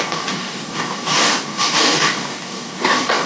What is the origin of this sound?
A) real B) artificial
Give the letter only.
B